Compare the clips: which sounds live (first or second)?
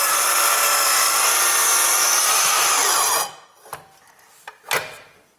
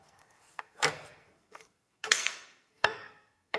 first